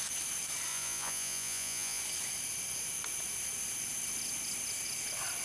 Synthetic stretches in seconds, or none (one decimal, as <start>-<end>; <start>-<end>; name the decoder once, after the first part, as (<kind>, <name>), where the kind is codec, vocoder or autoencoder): 0.7-2.0 (vocoder, Vocos)